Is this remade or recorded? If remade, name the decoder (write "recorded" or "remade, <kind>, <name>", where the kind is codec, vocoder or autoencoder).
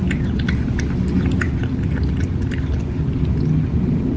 recorded